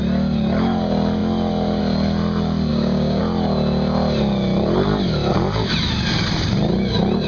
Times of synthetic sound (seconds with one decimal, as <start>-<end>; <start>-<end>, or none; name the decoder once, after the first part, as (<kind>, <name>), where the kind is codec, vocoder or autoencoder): 2.7-3.2 (codec, DAC)